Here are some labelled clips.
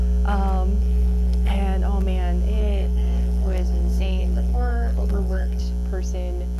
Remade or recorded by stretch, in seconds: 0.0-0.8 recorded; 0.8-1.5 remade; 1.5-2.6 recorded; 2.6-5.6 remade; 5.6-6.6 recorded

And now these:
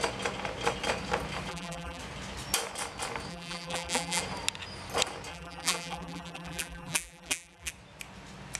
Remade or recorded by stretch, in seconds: 0.0-1.5 recorded; 1.5-2.0 remade; 2.0-3.3 recorded; 3.3-4.2 remade; 4.2-5.3 recorded; 5.3-7.7 remade; 7.7-8.6 recorded

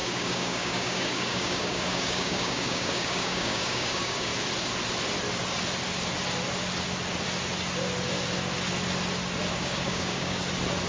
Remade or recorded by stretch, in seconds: 0.0-4.3 remade; 4.3-9.5 recorded; 9.5-10.4 remade; 10.4-10.9 recorded

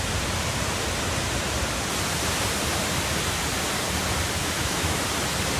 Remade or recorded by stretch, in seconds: 0.0-4.4 recorded; 4.4-5.0 remade; 5.0-5.6 recorded

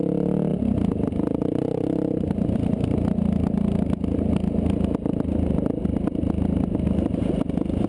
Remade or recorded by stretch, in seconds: 0.0-0.5 recorded; 0.5-3.1 remade; 3.1-7.9 recorded

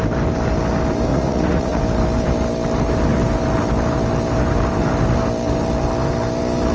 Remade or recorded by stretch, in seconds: 0.0-1.1 recorded; 1.1-1.8 remade; 1.8-6.7 recorded